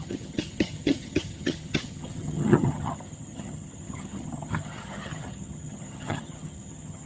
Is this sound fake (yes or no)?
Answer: yes